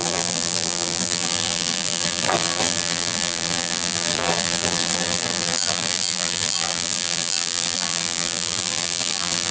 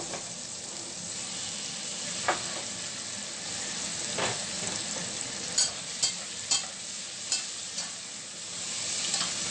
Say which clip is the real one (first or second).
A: second